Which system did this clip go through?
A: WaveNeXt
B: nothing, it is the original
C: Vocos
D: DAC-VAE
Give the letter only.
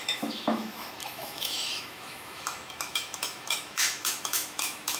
D